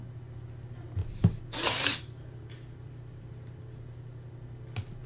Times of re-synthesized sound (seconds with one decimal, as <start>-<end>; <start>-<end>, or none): 1.0-3.3